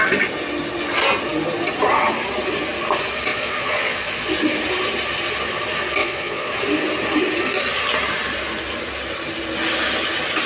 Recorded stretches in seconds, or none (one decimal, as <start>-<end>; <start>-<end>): 0.0-3.3; 4.3-6.0; 6.5-10.5